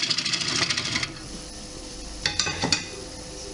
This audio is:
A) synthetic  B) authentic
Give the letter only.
A